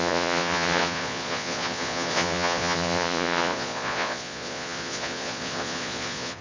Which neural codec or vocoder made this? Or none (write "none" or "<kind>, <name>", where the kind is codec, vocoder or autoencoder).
vocoder, Vocos